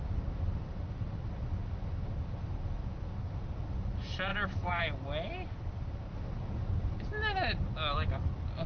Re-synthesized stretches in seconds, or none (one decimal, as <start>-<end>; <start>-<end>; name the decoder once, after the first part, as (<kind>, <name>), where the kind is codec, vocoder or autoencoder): 4.3-4.8 (vocoder, BigVGAN v2)